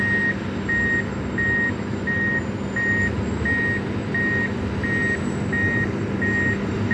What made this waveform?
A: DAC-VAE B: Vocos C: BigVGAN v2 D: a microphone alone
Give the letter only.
D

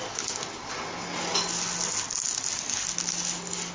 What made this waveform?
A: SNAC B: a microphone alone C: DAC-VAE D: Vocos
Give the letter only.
B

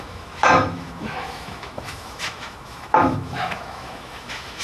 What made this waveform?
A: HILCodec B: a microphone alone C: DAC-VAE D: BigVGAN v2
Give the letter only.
C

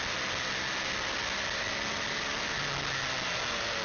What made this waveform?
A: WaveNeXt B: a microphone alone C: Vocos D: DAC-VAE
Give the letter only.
B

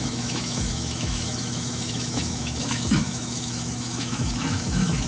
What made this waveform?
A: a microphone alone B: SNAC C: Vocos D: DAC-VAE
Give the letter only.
D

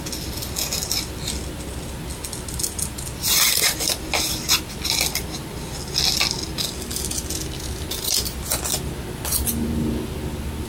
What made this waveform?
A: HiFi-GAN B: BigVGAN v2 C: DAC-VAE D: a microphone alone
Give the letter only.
D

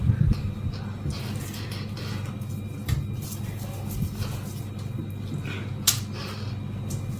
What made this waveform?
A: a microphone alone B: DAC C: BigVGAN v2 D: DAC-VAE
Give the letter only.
A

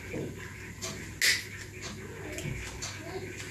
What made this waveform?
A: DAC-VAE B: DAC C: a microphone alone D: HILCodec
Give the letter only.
C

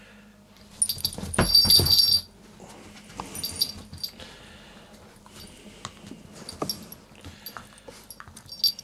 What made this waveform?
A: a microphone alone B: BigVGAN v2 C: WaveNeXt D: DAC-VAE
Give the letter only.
A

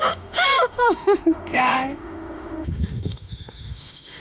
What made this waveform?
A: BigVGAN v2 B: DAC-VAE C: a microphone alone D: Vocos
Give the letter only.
B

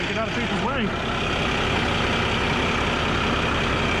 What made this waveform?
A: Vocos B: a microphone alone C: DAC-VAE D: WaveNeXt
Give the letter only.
B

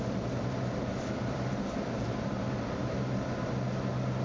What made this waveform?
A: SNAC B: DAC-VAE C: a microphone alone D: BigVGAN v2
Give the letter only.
C